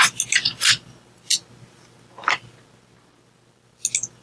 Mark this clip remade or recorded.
recorded